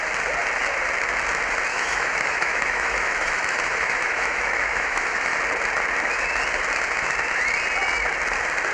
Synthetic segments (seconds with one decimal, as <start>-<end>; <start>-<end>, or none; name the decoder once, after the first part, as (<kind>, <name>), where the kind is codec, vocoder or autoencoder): 1.7-5.4 (autoencoder, DAC-VAE)